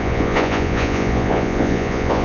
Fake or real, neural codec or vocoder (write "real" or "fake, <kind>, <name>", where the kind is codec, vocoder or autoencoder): fake, vocoder, Vocos